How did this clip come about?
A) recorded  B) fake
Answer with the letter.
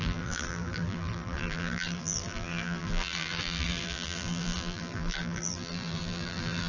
B